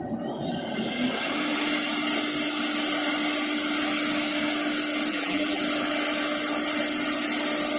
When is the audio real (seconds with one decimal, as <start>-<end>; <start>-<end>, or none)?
0.0-5.1; 5.6-7.8